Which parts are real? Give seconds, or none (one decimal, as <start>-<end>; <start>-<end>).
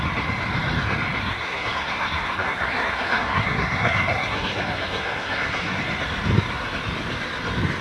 0.0-1.2; 5.8-7.8